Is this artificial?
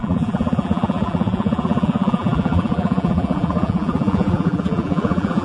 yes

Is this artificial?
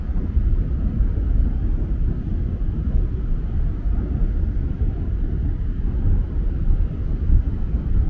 no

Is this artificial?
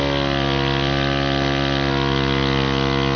no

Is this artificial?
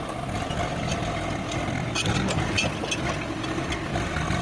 no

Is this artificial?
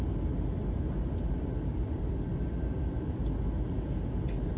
no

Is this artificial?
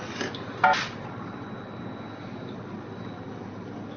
no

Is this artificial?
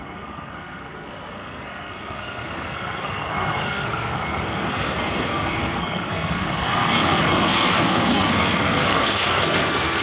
yes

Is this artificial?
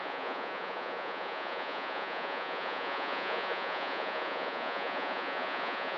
yes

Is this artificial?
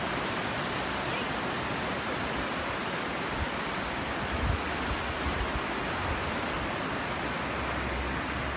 no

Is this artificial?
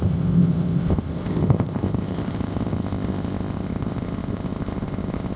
yes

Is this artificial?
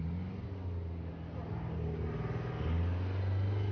no